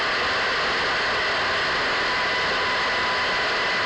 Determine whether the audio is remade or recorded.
recorded